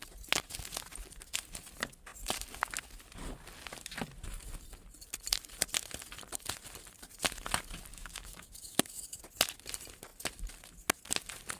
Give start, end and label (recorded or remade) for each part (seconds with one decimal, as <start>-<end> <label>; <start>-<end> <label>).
0.0-7.9 recorded; 7.9-9.2 remade; 9.2-11.6 recorded